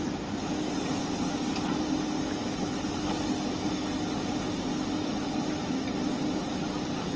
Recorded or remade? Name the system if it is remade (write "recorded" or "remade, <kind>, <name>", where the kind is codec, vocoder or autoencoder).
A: recorded